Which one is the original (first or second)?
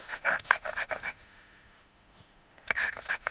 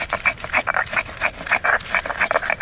second